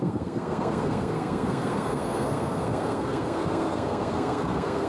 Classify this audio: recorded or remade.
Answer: remade